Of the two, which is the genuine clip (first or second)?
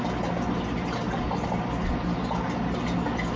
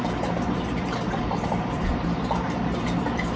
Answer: first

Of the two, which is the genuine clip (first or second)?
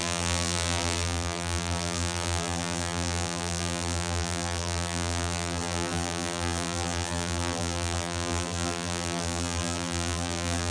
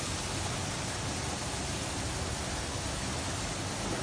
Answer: second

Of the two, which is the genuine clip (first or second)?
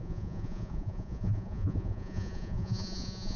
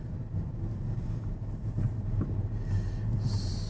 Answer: second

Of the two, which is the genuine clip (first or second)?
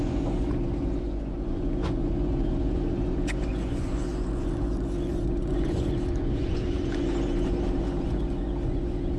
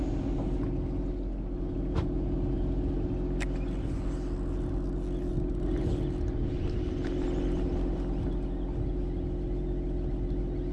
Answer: second